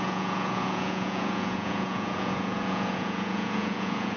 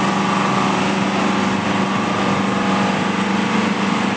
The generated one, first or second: first